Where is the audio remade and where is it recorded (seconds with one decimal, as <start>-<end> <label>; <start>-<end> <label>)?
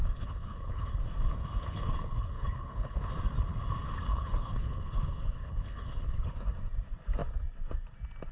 0.0-0.9 remade; 0.9-1.6 recorded; 1.6-3.1 remade; 3.1-4.1 recorded; 4.1-6.4 remade; 6.4-8.3 recorded